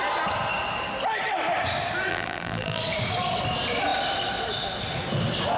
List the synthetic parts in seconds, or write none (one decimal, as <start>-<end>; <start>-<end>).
2.1-2.8